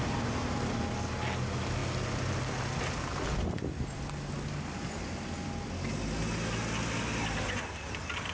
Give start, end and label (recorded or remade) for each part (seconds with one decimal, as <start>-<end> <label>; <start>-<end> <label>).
0.0-8.3 recorded